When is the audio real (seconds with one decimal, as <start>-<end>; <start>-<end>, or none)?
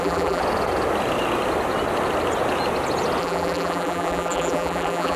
0.4-3.2